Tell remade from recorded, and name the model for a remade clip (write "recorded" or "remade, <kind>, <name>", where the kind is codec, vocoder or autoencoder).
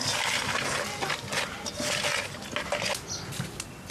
recorded